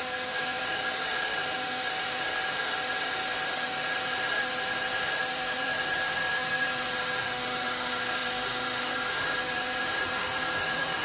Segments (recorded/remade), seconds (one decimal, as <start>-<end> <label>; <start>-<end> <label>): 0.0-11.0 remade